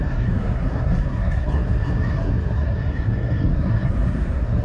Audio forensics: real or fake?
fake